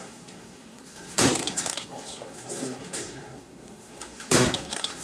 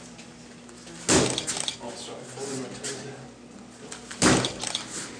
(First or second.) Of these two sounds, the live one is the second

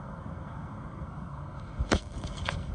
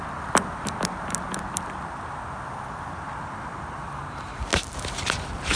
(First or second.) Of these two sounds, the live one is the second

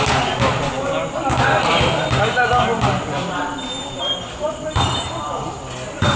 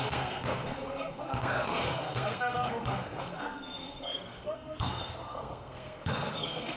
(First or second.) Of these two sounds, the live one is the first